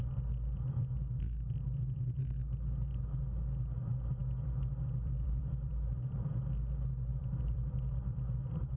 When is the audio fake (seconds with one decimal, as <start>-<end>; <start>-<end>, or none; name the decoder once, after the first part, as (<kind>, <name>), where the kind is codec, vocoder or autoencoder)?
4.2-6.3 (vocoder, BigVGAN v2); 7.1-8.8